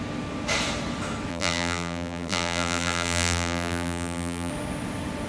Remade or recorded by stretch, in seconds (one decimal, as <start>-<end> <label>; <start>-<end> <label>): 0.0-1.3 recorded; 1.3-4.5 remade; 4.5-5.3 recorded